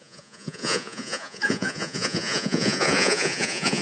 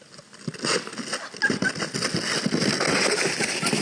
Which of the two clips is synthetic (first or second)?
first